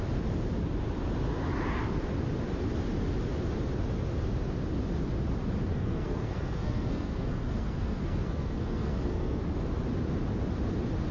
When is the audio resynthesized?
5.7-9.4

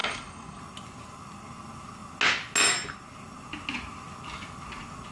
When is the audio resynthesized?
0.0-0.6